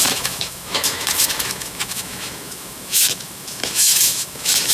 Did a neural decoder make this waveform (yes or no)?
yes